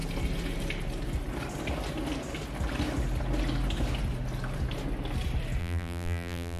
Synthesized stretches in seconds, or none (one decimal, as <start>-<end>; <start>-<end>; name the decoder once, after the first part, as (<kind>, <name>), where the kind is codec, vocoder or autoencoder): 5.6-6.6 (vocoder, BigVGAN v2)